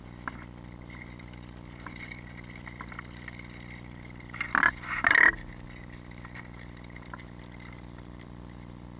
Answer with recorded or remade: remade